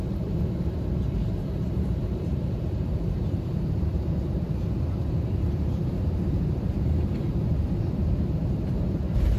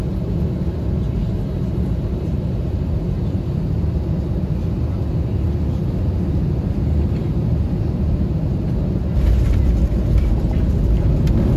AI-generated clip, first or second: first